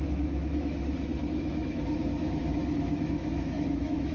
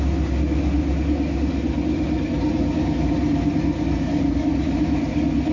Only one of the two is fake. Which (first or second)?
first